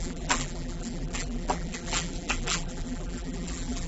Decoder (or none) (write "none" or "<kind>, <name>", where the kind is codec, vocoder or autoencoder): vocoder, BigVGAN v2